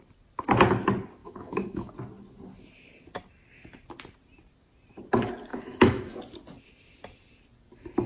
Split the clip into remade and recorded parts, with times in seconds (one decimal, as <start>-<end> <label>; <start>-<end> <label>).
0.0-1.2 recorded; 1.2-1.9 remade; 1.9-5.5 recorded; 5.5-6.2 remade; 6.2-8.1 recorded